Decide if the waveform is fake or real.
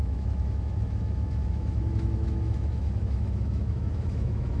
fake